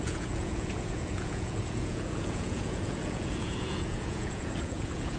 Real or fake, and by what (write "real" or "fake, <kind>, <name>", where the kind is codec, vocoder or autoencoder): fake, vocoder, Vocos